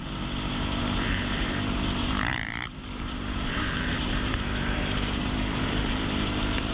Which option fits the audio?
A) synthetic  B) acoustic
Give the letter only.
A